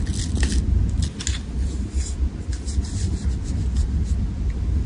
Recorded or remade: recorded